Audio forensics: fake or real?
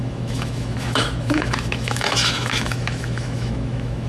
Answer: fake